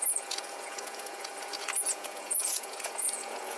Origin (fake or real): fake